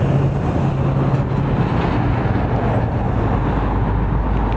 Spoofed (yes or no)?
no